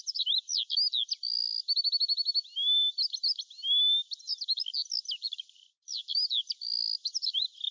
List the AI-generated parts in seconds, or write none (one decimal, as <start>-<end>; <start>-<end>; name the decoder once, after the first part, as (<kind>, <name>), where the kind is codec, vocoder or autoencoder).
none